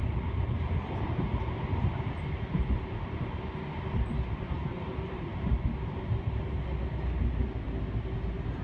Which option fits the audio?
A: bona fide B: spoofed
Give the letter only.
A